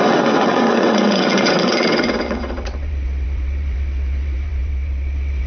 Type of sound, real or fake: fake